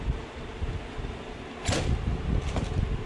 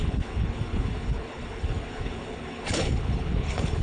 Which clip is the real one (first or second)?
first